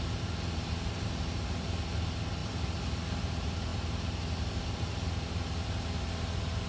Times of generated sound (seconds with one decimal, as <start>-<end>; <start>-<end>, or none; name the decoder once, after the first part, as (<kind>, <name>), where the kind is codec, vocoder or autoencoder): none